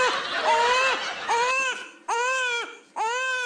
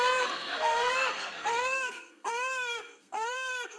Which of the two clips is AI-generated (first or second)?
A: second